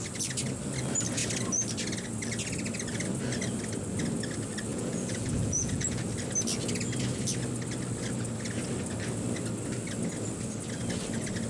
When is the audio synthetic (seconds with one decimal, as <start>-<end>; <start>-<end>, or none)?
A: 4.7-6.0